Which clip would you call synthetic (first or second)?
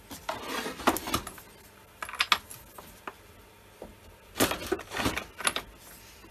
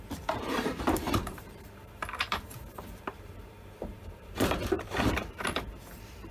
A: second